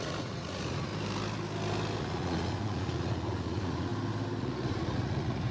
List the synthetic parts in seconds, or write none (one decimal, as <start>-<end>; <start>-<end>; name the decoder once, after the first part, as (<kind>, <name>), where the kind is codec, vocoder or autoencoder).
0.0-0.9 (vocoder, Vocos); 2.0-3.9; 4.4-5.5

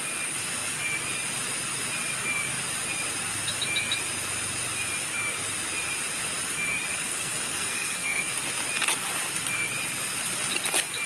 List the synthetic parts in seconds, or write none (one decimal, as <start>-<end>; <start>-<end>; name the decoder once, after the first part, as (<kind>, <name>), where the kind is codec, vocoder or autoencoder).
6.9-8.3 (codec, SNAC)

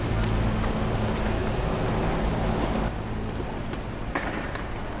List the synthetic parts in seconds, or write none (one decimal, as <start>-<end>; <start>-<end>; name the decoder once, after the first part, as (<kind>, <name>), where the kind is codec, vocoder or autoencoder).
none

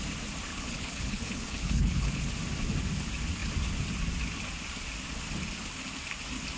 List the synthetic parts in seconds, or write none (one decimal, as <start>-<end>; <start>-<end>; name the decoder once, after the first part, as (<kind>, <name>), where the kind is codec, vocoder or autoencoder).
0.5-2.2 (codec, HILCodec)

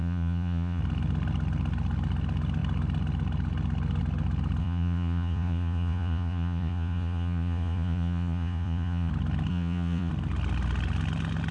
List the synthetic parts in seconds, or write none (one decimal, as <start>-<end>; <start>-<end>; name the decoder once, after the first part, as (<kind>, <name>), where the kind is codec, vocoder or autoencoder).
0.0-0.8 (vocoder, Vocos); 4.6-9.1; 9.5-10.1

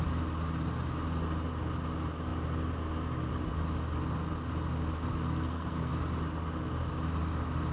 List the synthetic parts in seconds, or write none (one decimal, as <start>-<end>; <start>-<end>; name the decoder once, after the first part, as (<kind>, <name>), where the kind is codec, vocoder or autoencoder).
5.1-5.9 (codec, SNAC)

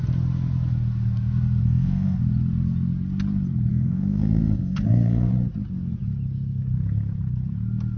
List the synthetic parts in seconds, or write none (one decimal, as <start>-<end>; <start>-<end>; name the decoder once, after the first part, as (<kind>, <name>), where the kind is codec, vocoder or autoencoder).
1.6-2.2 (codec, SNAC); 3.7-5.3

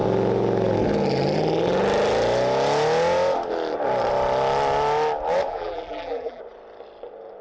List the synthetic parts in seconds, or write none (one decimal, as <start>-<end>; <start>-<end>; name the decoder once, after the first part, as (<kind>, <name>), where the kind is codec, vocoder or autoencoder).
5.5-6.4 (vocoder, BigVGAN v2)